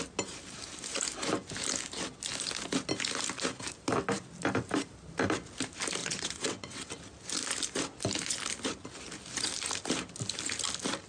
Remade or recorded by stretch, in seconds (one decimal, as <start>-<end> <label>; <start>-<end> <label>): 0.0-6.0 recorded; 6.0-6.9 remade; 6.9-11.1 recorded